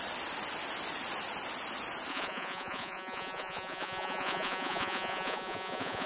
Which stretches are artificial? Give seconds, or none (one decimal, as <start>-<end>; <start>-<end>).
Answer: 2.1-6.1